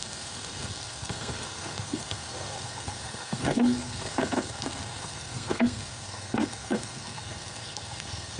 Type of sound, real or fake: fake